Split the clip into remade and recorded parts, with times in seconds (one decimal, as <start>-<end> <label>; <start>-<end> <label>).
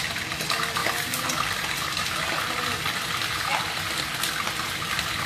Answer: 0.0-5.3 recorded